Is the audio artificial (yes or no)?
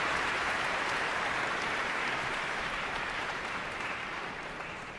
yes